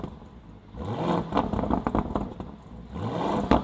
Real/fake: real